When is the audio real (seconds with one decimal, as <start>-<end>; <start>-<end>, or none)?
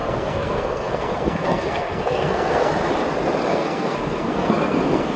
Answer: 2.7-3.5